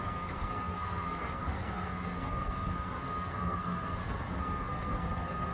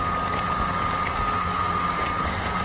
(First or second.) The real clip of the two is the second